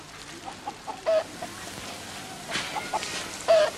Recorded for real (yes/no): yes